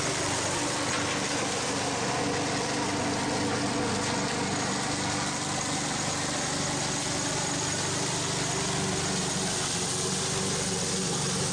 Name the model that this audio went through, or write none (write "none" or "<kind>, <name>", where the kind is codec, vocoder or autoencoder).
none